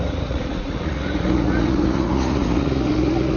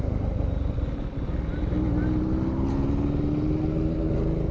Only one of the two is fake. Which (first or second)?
first